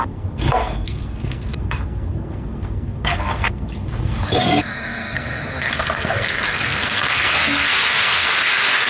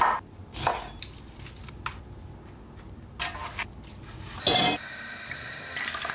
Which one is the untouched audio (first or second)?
second